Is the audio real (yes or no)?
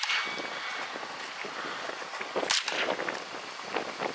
yes